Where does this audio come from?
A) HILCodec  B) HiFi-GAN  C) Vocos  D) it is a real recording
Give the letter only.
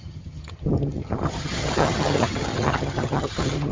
B